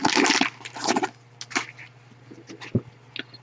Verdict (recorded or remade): recorded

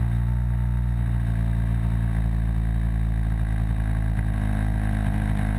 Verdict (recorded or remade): recorded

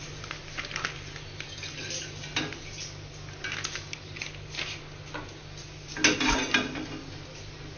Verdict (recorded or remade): recorded